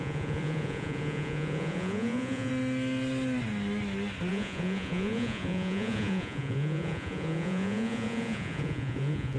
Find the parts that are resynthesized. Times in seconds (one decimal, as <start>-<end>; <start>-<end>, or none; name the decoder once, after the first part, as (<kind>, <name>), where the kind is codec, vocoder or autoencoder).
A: 0.0-2.5 (vocoder, Vocos); 4.3-9.4

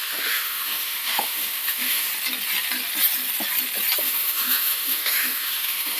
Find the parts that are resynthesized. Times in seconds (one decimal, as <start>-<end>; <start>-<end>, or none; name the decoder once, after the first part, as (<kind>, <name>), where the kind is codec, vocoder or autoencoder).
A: 0.0-2.1 (autoencoder, DAC-VAE); 4.0-6.0

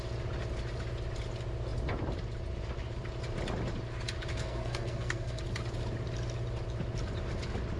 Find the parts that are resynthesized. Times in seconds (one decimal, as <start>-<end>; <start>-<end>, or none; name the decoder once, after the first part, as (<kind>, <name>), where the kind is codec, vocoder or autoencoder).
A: 4.3-5.4 (codec, SNAC)

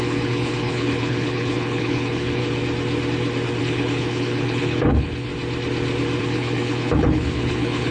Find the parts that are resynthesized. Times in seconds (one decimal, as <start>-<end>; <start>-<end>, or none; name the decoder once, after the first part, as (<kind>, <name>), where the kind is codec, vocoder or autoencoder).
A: 0.0-2.4 (codec, HILCodec); 3.6-5.3; 6.2-7.9